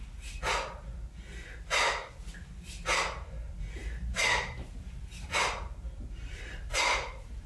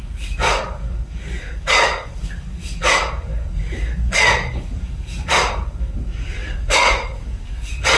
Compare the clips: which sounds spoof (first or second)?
second